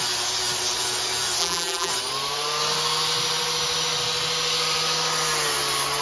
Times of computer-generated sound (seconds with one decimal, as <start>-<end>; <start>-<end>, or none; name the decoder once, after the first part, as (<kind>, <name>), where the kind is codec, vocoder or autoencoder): 1.4-1.9 (vocoder, BigVGAN v2)

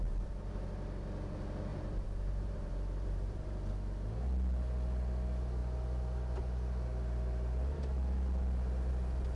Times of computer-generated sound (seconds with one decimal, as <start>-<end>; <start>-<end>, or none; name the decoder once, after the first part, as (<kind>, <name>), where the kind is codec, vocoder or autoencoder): 1.7-3.7 (vocoder, BigVGAN v2)

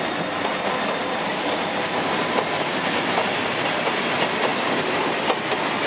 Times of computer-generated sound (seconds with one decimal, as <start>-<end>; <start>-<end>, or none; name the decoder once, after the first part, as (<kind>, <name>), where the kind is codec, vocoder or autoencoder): 0.5-4.0 (vocoder, BigVGAN v2); 4.5-5.1

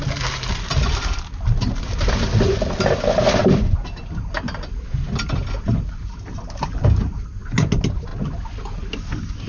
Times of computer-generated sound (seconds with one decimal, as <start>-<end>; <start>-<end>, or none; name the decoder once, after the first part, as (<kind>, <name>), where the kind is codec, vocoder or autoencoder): none

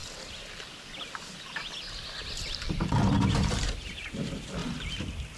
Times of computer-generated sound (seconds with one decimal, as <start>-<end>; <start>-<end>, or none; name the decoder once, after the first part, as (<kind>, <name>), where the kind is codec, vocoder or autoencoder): 3.2-4.6 (vocoder, BigVGAN v2)

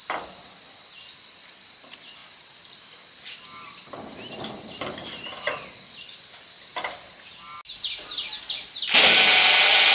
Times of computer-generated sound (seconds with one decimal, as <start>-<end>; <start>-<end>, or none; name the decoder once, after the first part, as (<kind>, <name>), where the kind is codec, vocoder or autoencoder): none

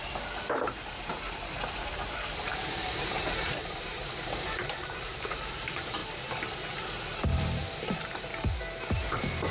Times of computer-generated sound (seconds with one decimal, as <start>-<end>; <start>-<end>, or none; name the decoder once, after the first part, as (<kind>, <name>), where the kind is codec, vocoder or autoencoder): 0.0-6.0 (vocoder, BigVGAN v2); 7.2-8.3; 8.9-9.5